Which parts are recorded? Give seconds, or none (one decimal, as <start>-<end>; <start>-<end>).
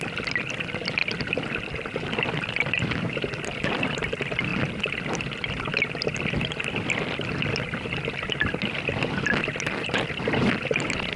0.0-11.2